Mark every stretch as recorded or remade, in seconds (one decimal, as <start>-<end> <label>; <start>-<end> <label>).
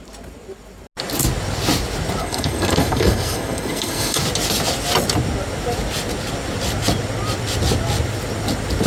0.0-2.2 recorded; 2.2-4.2 remade; 4.2-8.9 recorded